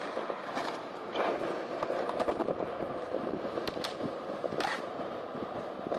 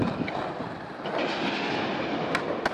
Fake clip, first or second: first